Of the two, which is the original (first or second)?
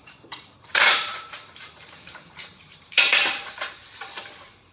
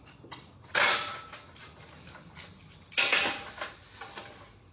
second